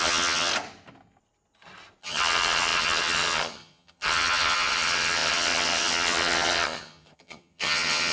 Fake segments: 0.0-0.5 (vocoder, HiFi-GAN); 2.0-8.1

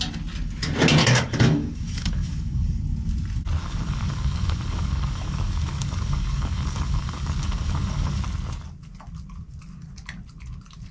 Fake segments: 1.0-2.8 (codec, DAC); 3.6-8.2

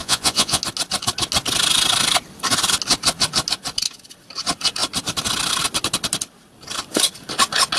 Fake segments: 0.0-0.6 (vocoder, Vocos)

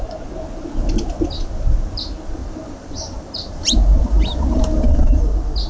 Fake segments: 2.4-5.2 (vocoder, BigVGAN v2)